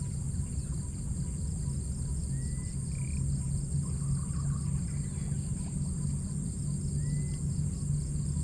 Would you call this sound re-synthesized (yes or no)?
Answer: no